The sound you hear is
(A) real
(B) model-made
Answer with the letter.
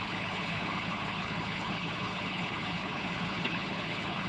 B